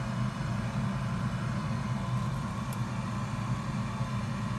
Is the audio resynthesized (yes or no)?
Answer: no